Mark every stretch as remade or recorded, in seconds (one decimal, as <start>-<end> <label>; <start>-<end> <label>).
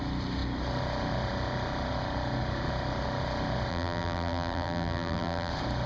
0.0-3.7 recorded; 3.7-5.5 remade; 5.5-5.9 recorded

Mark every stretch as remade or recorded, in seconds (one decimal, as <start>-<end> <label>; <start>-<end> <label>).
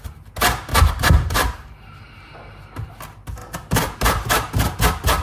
0.0-0.7 recorded; 0.7-2.9 remade; 2.9-5.2 recorded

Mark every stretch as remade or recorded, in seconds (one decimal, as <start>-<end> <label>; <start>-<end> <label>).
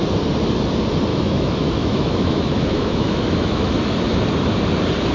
0.0-1.1 recorded; 1.1-3.9 remade; 3.9-5.1 recorded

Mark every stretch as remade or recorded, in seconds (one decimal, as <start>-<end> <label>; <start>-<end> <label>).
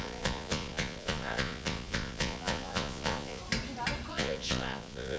0.0-3.4 remade; 3.4-4.1 recorded; 4.1-5.2 remade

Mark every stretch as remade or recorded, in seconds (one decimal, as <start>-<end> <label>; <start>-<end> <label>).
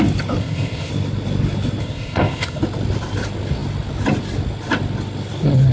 0.0-0.4 recorded; 0.4-0.9 remade; 0.9-1.8 recorded; 1.8-2.6 remade; 2.6-5.7 recorded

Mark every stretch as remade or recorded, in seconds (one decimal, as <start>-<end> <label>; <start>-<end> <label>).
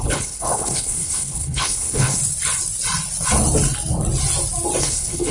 0.0-2.2 remade; 2.2-4.8 recorded; 4.8-5.3 remade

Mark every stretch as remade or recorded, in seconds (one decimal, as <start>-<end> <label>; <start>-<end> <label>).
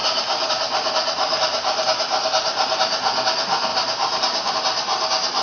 0.0-3.7 recorded; 3.7-4.5 remade; 4.5-5.4 recorded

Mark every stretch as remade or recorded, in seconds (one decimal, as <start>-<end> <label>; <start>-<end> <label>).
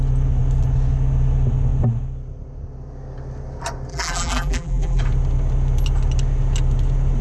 0.0-3.9 recorded; 3.9-5.0 remade; 5.0-7.2 recorded